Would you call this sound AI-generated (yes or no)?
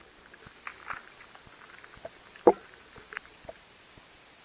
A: no